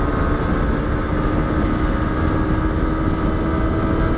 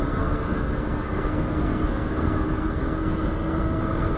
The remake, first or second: second